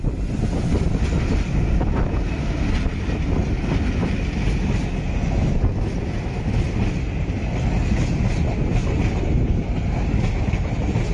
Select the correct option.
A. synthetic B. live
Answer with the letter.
B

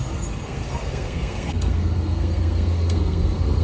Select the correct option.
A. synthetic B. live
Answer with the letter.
A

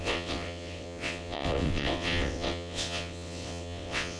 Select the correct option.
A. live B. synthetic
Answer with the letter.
B